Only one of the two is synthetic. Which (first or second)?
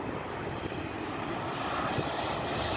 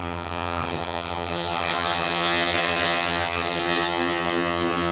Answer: second